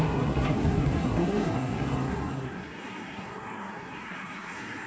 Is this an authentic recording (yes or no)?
no